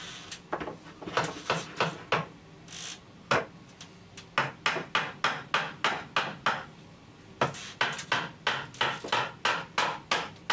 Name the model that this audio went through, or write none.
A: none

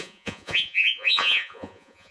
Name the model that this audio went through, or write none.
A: vocoder, Vocos